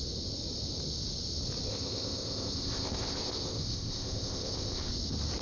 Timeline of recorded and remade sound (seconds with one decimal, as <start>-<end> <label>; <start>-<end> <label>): 0.0-1.7 recorded; 1.7-4.9 remade; 4.9-5.4 recorded